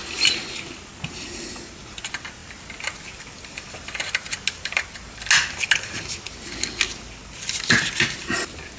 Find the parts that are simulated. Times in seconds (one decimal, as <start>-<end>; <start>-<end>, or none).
none